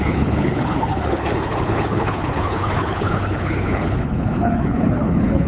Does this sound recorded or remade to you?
remade